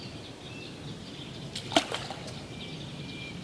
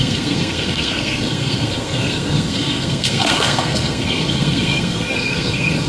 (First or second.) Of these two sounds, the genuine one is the first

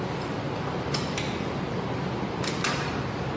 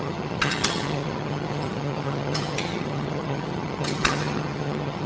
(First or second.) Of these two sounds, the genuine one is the first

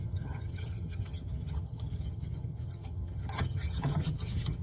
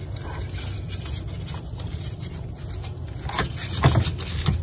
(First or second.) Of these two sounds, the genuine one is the second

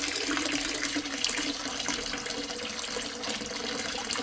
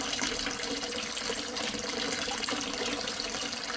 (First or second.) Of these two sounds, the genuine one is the first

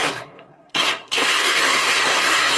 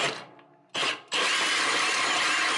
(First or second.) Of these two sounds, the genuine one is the second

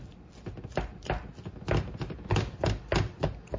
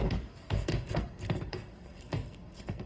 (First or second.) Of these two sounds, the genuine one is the first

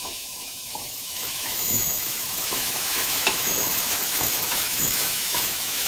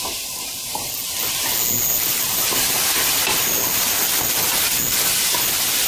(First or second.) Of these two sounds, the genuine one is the second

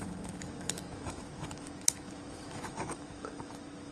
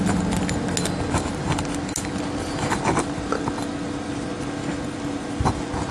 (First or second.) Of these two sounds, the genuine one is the second